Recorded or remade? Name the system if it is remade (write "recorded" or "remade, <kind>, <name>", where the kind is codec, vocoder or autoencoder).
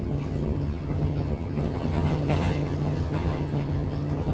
remade, vocoder, HiFi-GAN